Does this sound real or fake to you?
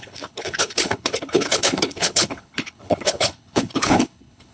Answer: fake